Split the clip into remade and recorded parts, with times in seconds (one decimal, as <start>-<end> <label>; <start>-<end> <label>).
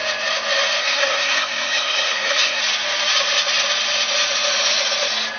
0.0-0.8 recorded; 0.8-2.6 remade; 2.6-5.4 recorded